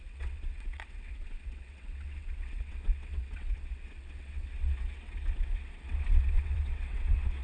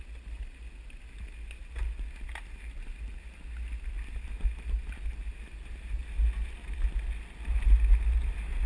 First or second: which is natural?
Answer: second